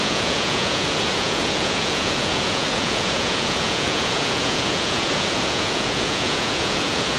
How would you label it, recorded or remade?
remade